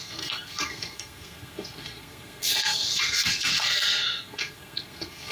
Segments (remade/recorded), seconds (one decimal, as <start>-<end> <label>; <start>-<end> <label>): 0.0-5.3 remade

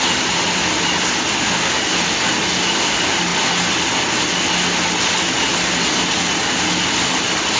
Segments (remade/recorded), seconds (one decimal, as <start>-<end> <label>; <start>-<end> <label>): 0.0-7.6 recorded

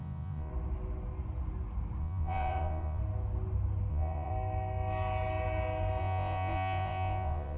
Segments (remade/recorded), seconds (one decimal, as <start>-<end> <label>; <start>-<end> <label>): 0.0-0.5 remade; 0.5-2.0 recorded; 2.0-3.0 remade; 3.0-3.9 recorded; 3.9-4.3 remade; 4.3-6.0 recorded; 6.0-7.6 remade